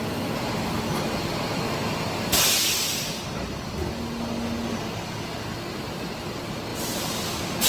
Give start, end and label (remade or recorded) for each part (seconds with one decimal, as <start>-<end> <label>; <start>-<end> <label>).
0.0-7.7 recorded